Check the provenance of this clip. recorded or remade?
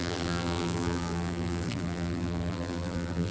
remade